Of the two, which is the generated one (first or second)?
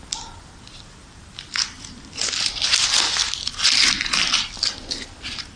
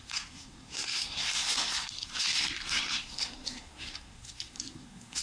second